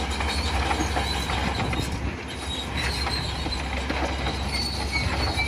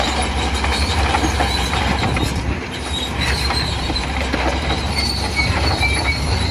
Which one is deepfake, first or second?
second